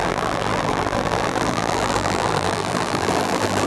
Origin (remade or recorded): remade